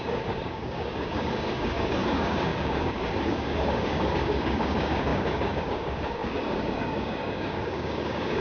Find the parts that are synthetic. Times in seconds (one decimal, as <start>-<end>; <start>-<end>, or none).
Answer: 0.0-8.4